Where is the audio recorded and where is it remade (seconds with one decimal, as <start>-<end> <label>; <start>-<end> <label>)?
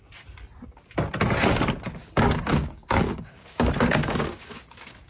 0.0-2.0 recorded; 2.0-5.1 remade